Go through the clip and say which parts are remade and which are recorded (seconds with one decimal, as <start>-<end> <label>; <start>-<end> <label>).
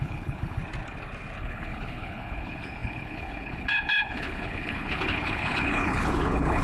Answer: 0.0-0.6 remade; 0.6-1.4 recorded; 1.4-6.6 remade